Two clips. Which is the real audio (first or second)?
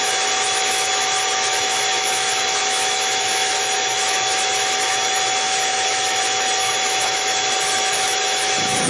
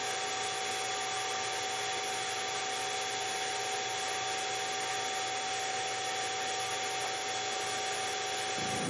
second